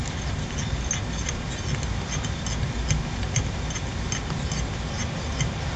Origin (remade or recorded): recorded